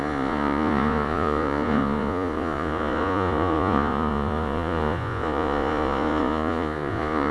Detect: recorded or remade remade